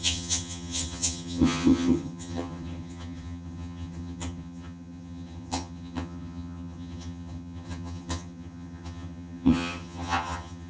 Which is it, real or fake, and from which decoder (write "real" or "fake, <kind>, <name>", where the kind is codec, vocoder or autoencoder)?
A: fake, vocoder, HiFi-GAN